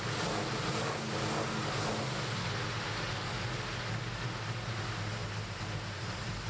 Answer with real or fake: real